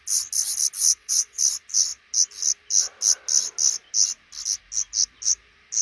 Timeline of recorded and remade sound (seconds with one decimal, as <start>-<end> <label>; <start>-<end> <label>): 0.0-0.9 recorded; 0.9-1.4 remade; 1.4-5.8 recorded